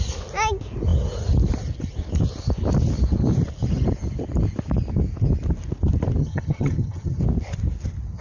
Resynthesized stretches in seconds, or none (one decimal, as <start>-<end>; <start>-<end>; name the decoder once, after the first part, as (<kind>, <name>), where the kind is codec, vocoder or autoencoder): 6.2-7.2 (vocoder, HiFi-GAN)